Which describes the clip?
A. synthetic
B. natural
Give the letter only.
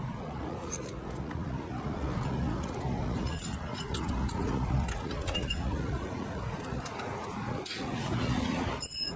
A